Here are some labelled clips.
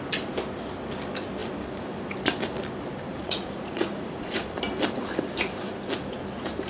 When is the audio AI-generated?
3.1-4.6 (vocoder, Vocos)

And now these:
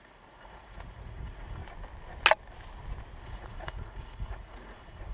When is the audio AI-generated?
0.0-1.6 (vocoder, Vocos); 3.2-5.1